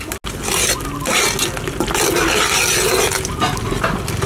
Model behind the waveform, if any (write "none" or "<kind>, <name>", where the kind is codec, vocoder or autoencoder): none